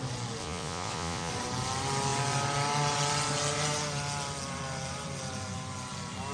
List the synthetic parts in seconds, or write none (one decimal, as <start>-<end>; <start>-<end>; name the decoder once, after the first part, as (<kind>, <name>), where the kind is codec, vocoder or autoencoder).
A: 0.4-1.3 (vocoder, Vocos)